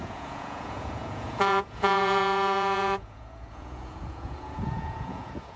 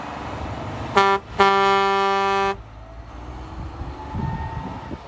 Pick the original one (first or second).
second